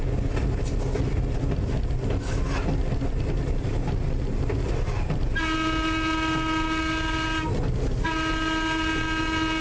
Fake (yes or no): no